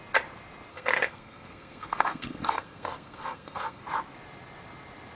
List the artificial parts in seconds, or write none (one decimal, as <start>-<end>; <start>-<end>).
0.7-3.8